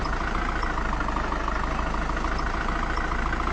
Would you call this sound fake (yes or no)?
no